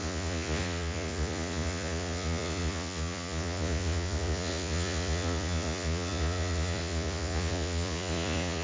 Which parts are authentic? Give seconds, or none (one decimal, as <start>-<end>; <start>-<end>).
none